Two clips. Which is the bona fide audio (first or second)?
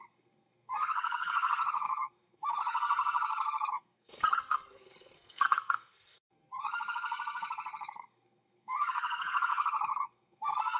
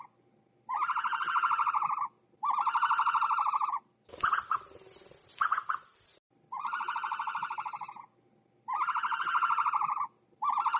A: second